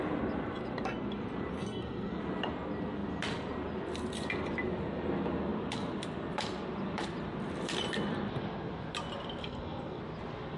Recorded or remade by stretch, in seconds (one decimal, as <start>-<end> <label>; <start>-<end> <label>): 0.0-1.6 recorded; 1.6-2.2 remade; 2.2-9.4 recorded; 9.4-10.0 remade; 10.0-10.6 recorded

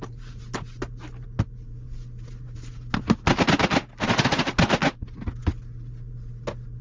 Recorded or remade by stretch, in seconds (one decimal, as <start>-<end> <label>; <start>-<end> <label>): 0.0-6.8 recorded

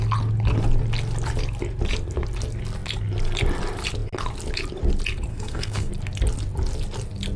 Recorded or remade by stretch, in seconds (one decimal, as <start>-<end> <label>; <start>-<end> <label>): 0.0-5.3 recorded; 5.3-5.9 remade; 5.9-7.4 recorded

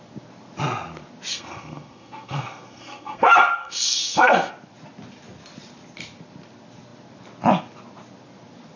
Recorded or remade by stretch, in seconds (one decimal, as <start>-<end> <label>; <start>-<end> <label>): 0.0-1.3 recorded; 1.3-4.5 remade; 4.5-8.8 recorded

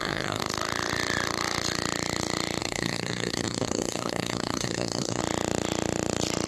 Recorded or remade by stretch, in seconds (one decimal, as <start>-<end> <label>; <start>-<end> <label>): 0.0-0.4 remade; 0.4-2.6 recorded; 2.6-5.2 remade; 5.2-6.5 recorded

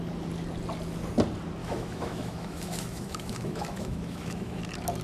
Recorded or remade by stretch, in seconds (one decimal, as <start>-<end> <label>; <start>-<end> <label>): 0.0-1.6 recorded; 1.6-4.6 remade; 4.6-5.0 recorded

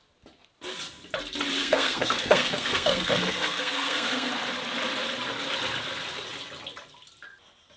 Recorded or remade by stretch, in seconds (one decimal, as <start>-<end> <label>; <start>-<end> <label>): 0.0-1.6 recorded; 1.6-4.3 remade; 4.3-7.8 recorded